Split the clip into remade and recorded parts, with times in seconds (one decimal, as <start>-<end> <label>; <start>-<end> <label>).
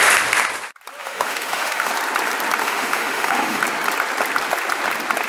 0.0-1.0 recorded; 1.0-1.9 remade; 1.9-2.6 recorded; 2.6-3.6 remade; 3.6-5.3 recorded